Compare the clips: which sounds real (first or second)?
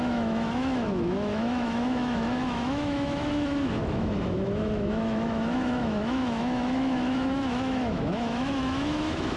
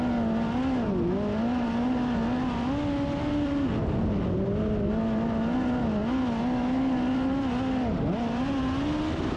second